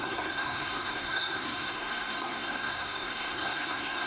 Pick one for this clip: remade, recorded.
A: remade